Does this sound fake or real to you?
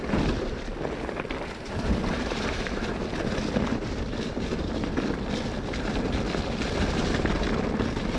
real